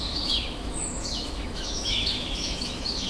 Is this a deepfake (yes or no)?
yes